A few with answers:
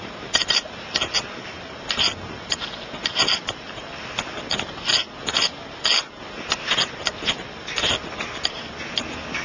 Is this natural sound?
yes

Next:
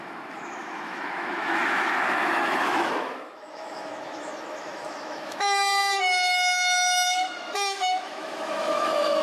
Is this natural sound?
no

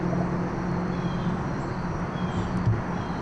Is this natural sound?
yes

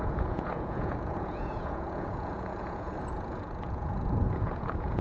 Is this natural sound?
no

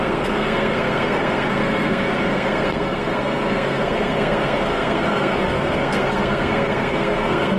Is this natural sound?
no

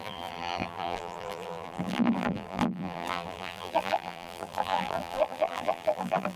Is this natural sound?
no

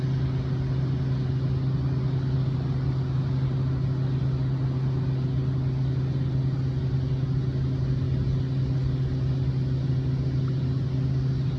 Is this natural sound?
yes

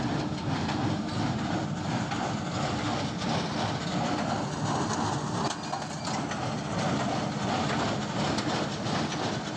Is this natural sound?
yes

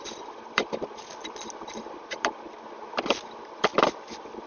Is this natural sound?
yes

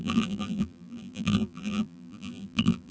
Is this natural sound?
no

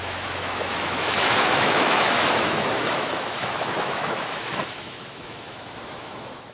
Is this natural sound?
no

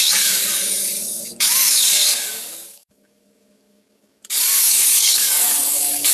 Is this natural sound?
no